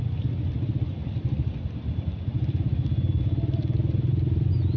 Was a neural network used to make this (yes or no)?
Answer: no